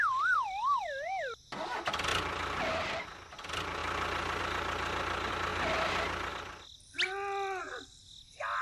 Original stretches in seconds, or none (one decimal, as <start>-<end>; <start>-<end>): 0.0-8.6